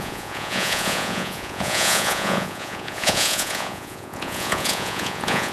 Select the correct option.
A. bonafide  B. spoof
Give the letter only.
B